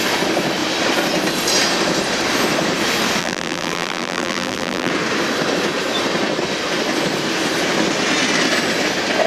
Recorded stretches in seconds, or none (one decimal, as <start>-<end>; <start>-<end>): 0.0-3.2; 4.9-9.3